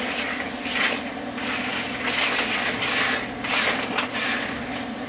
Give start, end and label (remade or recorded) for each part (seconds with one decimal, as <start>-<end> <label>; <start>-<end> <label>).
0.0-5.1 recorded